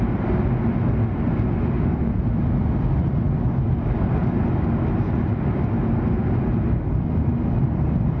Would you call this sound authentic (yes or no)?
yes